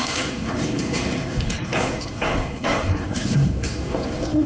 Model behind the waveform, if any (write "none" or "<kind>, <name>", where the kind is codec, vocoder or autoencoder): codec, SNAC